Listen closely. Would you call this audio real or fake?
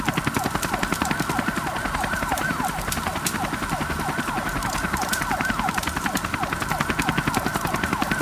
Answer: real